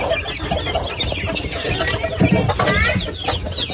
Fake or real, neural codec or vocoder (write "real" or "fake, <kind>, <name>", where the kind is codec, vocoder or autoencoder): real